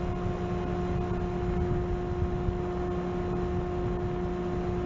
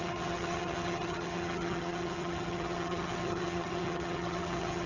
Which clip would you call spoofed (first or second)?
second